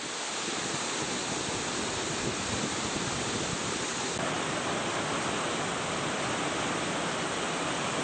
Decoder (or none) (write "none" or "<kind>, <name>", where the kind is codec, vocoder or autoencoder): none